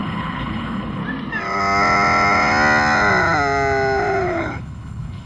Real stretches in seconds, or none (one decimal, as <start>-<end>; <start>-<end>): 1.0-4.2